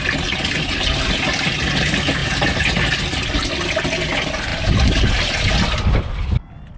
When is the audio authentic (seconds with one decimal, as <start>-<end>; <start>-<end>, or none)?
0.0-6.8